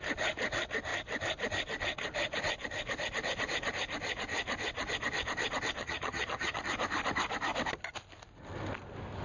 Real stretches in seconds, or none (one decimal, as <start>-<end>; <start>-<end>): 0.0-5.8; 6.6-9.2